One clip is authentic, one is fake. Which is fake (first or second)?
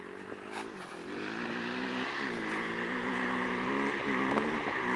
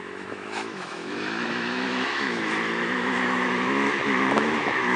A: second